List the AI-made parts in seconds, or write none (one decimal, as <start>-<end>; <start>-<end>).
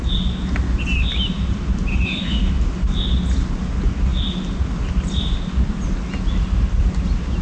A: 1.9-2.5